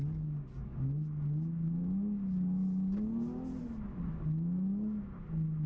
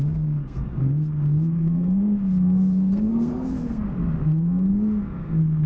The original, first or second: first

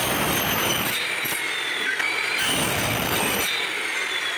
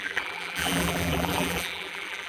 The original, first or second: first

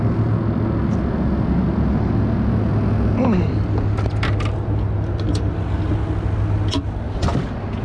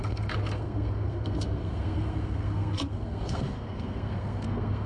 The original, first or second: first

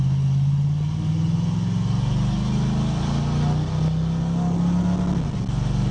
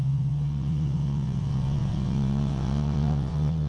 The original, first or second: first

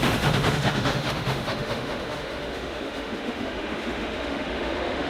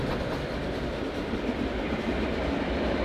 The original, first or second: second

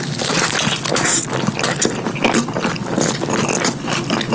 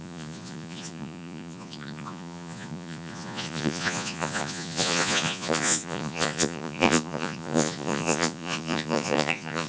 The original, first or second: first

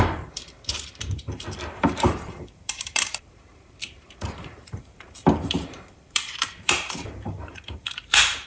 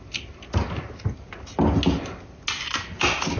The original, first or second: second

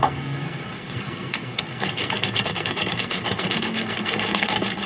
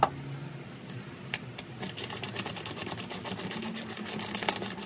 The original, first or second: second